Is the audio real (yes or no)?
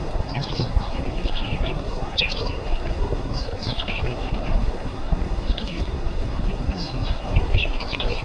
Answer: no